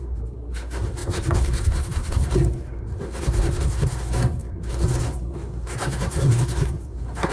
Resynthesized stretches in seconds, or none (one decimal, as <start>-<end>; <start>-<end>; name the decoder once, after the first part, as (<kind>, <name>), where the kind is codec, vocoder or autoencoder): 0.0-7.3 (codec, SNAC)